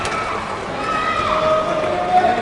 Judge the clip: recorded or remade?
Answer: recorded